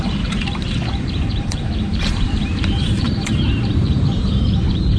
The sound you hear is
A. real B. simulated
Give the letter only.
B